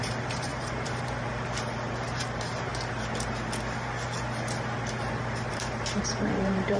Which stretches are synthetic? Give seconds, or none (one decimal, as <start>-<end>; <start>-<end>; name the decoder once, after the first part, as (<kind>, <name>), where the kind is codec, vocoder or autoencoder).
0.0-2.7 (vocoder, BigVGAN v2); 5.5-6.8